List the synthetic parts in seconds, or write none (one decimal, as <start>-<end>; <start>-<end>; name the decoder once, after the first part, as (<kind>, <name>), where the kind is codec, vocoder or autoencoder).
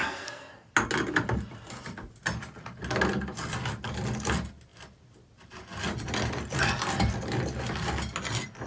0.0-0.7 (codec, SNAC)